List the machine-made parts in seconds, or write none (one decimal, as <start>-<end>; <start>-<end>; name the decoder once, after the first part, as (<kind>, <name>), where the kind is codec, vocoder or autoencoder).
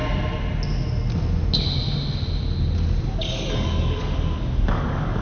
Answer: 3.1-5.2 (codec, DAC)